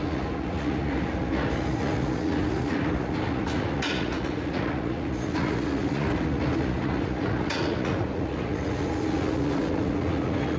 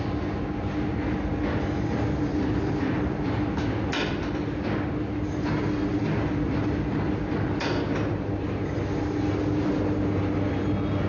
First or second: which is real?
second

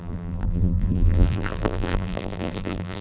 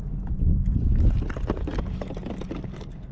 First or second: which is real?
second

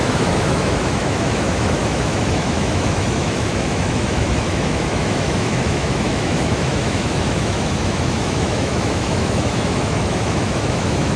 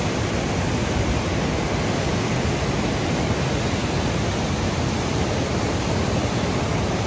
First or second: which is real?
second